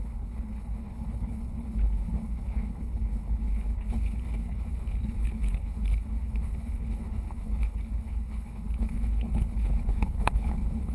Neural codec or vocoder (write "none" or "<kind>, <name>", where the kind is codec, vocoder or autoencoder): codec, HILCodec